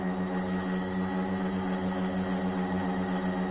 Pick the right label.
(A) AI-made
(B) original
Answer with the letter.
B